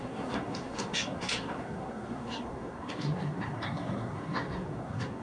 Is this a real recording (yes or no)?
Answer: no